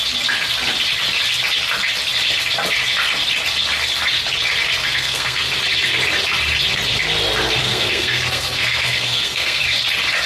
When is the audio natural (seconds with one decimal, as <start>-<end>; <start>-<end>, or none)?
0.0-4.8; 5.5-7.6; 9.6-10.3